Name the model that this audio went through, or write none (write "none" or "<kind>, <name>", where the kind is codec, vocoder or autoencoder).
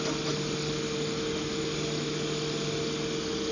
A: none